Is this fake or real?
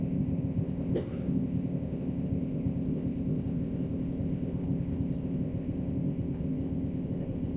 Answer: fake